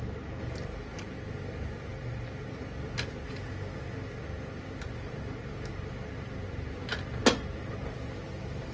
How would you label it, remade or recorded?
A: recorded